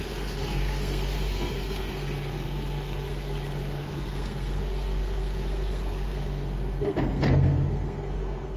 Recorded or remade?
remade